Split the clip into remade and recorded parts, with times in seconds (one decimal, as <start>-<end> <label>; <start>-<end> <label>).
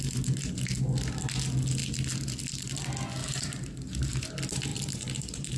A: 0.0-3.2 recorded; 3.2-4.3 remade; 4.3-4.7 recorded; 4.7-5.6 remade